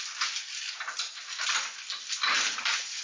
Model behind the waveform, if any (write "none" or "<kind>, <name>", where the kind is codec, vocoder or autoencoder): none